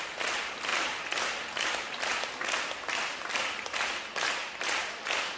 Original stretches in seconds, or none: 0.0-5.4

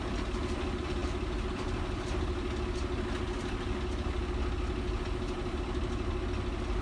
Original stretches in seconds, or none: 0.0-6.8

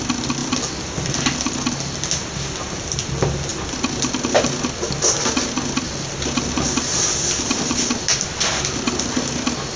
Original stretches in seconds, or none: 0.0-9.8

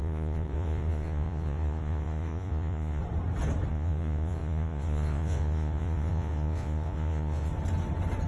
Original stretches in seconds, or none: 3.0-3.7; 7.5-8.3

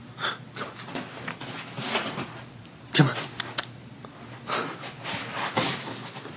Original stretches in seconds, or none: 0.0-1.8; 2.6-6.4